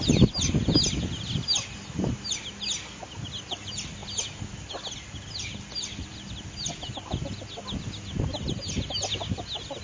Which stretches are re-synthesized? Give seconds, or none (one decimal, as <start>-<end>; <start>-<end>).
none